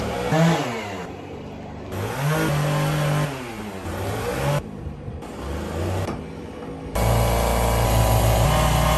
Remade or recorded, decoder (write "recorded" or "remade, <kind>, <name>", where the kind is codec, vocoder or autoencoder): recorded